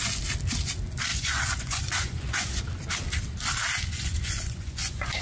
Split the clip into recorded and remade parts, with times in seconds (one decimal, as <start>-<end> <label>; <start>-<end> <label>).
0.0-1.1 recorded; 1.1-2.6 remade; 2.6-3.9 recorded; 3.9-5.2 remade